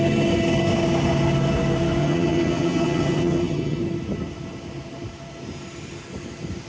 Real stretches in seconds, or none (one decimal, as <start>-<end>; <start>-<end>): 0.0-2.0; 3.8-6.7